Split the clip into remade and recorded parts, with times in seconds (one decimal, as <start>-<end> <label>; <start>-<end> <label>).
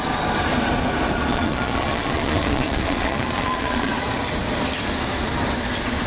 0.0-1.3 recorded; 1.3-3.9 remade; 3.9-6.1 recorded